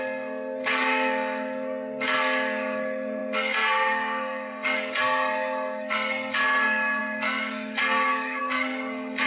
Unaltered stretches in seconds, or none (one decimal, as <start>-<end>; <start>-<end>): none